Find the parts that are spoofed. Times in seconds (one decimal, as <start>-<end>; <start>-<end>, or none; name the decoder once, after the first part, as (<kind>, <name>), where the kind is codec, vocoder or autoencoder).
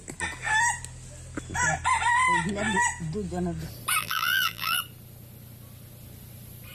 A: 4.0-4.8 (vocoder, BigVGAN v2)